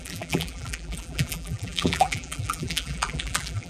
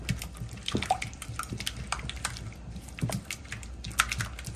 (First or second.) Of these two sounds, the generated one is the first